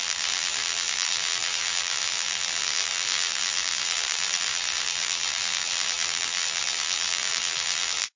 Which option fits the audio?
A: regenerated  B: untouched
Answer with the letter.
A